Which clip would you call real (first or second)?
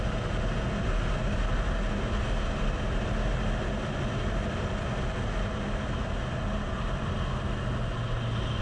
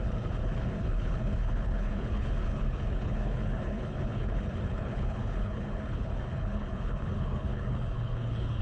first